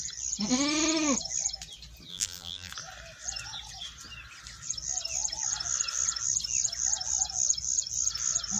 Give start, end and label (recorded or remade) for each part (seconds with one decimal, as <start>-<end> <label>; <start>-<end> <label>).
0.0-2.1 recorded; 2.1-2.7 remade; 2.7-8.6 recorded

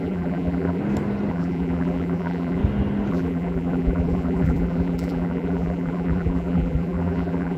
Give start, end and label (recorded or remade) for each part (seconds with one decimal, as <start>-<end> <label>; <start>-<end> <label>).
0.0-0.8 remade; 0.8-1.3 recorded; 1.3-2.6 remade; 2.6-3.1 recorded; 3.1-7.6 remade

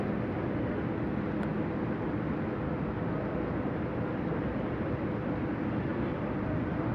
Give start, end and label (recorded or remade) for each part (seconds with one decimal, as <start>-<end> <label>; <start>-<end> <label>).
0.0-6.9 remade

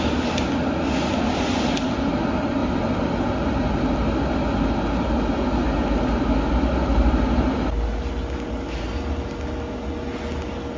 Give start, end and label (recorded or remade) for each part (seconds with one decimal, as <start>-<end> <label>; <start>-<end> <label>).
0.0-10.8 recorded